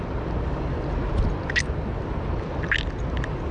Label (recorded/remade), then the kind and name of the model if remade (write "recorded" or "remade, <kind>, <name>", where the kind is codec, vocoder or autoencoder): recorded